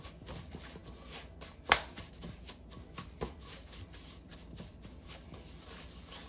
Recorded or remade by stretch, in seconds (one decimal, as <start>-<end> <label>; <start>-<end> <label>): 0.0-6.3 recorded